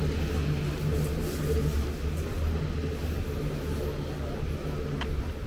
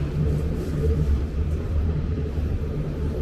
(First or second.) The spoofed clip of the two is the second